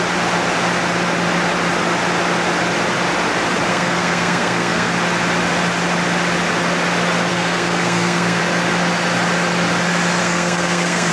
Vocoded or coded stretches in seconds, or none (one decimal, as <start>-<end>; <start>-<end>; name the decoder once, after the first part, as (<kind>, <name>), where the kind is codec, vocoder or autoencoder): 3.7-4.9 (codec, SNAC); 7.3-8.4; 10.2-11.1